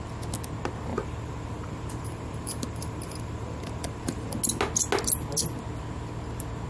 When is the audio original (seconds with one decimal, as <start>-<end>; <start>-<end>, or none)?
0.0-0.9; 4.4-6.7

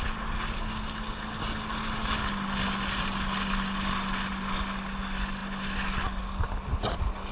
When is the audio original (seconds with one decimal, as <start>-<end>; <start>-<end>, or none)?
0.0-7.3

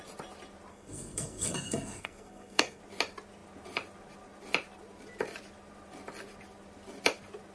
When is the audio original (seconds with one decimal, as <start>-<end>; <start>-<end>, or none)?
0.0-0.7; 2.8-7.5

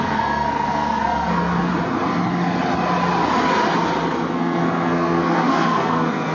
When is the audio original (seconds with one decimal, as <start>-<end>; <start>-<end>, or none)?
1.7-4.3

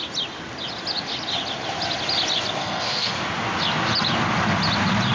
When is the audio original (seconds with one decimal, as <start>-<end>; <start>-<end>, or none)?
0.0-2.6; 3.1-5.1

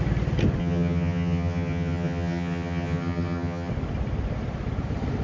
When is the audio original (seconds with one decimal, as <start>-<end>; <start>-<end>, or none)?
0.0-0.6; 3.7-5.2